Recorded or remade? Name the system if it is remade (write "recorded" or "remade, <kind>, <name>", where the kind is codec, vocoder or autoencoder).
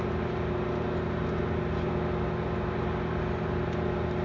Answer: recorded